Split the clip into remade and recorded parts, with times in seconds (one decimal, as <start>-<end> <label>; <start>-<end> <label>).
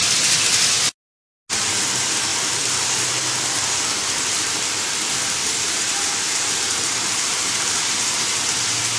0.0-5.4 recorded; 5.4-7.8 remade; 7.8-9.0 recorded